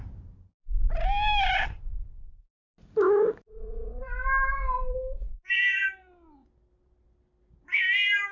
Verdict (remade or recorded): recorded